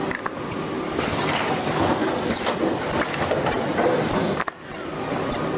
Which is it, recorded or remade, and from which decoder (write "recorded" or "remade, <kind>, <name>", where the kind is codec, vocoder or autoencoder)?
recorded